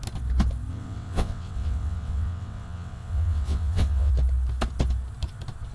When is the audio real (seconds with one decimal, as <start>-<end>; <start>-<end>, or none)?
0.0-0.7; 4.1-5.7